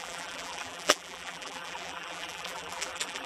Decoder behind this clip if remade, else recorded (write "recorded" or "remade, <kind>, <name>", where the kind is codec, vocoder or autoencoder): remade, vocoder, BigVGAN v2